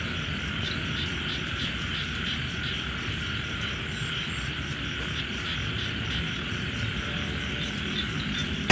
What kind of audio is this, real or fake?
real